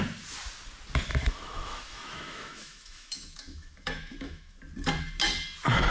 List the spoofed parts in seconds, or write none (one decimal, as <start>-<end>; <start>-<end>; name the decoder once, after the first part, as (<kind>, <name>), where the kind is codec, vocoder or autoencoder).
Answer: 1.1-4.6 (autoencoder, DAC-VAE)